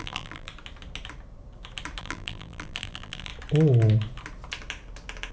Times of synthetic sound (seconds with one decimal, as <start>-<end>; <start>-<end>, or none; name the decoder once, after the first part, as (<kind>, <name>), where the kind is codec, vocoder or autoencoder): 0.0-0.5 (vocoder, BigVGAN v2); 2.0-3.3

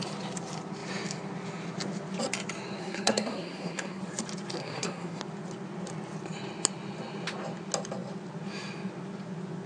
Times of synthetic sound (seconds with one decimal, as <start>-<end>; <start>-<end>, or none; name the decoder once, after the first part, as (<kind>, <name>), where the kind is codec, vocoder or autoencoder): 2.8-4.0 (codec, SNAC); 4.6-5.2

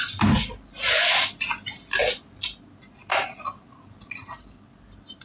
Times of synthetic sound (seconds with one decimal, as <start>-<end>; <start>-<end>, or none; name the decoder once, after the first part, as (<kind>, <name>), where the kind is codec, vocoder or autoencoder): none

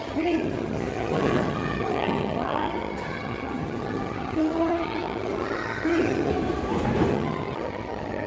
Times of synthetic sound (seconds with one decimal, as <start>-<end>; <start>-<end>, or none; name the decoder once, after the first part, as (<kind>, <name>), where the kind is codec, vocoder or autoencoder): 0.0-6.3 (vocoder, HiFi-GAN); 7.1-8.3

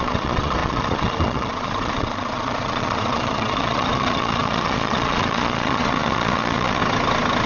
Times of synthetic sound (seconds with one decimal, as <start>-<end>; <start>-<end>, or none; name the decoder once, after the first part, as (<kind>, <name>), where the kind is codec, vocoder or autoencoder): 0.0-6.8 (vocoder, Vocos)